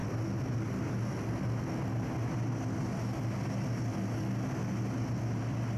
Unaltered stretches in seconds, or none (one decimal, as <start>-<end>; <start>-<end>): 0.0-5.8